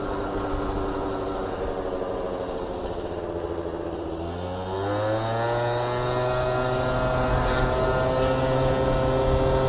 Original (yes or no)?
yes